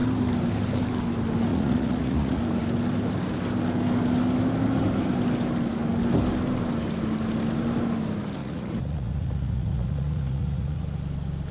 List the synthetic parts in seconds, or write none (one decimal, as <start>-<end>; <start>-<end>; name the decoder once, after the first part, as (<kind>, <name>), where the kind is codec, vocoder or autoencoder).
1.5-2.4 (vocoder, Vocos); 8.4-10.8